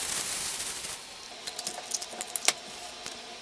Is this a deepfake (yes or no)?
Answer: no